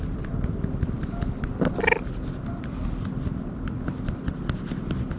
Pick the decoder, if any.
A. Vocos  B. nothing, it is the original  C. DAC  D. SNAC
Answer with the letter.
B